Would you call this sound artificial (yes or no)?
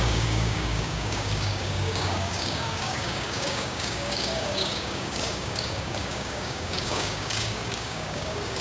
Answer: yes